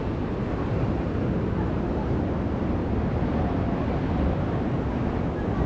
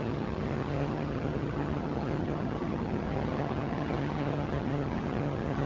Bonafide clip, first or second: first